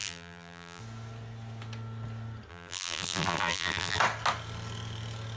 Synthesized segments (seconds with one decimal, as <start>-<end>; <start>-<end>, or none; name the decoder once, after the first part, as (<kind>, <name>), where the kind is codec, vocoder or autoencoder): 0.0-0.8 (vocoder, BigVGAN v2); 2.5-4.0